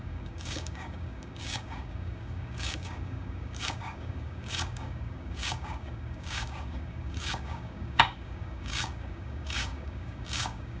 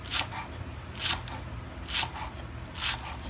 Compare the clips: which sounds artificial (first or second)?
first